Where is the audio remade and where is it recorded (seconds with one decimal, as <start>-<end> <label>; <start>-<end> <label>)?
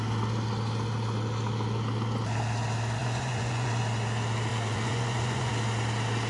0.0-3.0 recorded; 3.0-3.8 remade; 3.8-4.5 recorded; 4.5-5.5 remade; 5.5-6.3 recorded